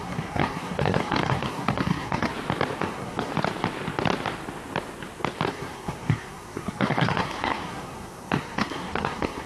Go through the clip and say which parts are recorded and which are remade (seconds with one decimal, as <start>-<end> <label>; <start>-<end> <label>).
0.0-2.3 remade; 2.3-2.8 recorded; 2.8-3.3 remade; 3.3-5.5 recorded; 5.5-9.5 remade